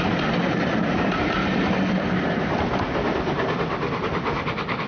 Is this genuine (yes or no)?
yes